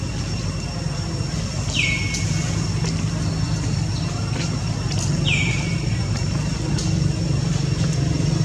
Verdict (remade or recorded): recorded